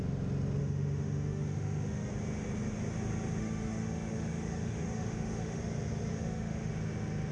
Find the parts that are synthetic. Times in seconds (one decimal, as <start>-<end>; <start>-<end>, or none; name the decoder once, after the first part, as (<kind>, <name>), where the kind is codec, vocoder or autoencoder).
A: 0.6-2.1 (autoencoder, DAC-VAE); 3.4-5.6; 6.1-6.7